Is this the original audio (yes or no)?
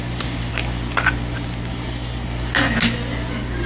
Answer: yes